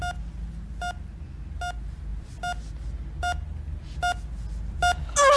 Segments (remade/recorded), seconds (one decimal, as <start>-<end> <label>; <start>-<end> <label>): 0.0-5.4 recorded